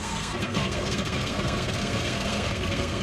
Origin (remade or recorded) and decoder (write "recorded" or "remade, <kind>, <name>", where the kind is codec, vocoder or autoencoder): remade, codec, SNAC